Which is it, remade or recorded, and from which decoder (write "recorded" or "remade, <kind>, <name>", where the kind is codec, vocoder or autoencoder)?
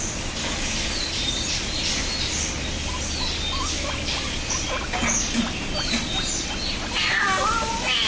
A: recorded